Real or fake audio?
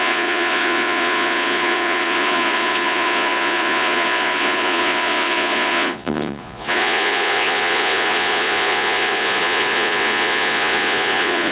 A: fake